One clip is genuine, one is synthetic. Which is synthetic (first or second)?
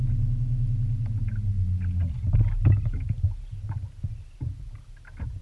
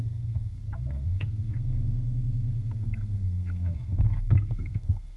second